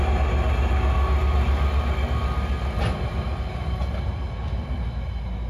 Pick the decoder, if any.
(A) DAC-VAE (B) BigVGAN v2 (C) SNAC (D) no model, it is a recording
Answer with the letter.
D